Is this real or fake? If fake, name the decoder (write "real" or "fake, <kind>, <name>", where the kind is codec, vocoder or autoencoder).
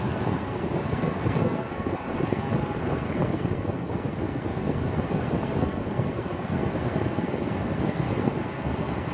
fake, codec, SNAC